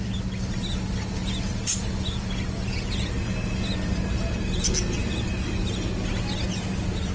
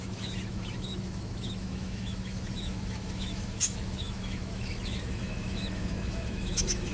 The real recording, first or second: first